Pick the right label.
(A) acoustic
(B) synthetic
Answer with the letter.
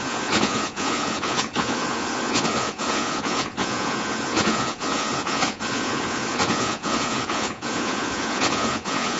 B